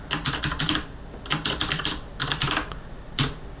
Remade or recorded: recorded